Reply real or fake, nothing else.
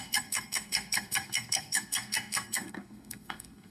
fake